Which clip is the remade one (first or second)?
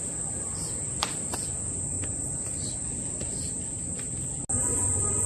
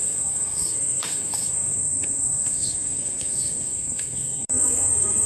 second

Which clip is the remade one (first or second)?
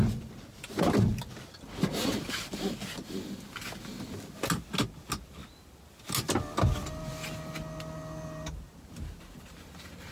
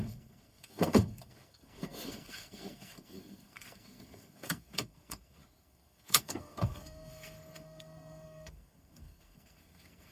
second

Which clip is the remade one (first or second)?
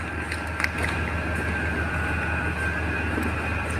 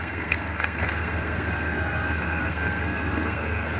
second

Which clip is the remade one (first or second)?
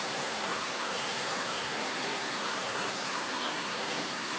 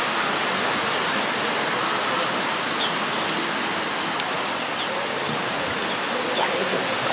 first